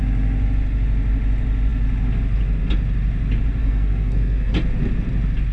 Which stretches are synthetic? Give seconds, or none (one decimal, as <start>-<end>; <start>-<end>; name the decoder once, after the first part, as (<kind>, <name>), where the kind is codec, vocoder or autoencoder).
3.6-4.5 (codec, SNAC)